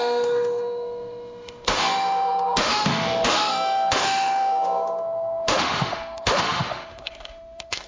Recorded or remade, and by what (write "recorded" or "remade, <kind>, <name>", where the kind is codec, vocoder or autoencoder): remade, autoencoder, DAC-VAE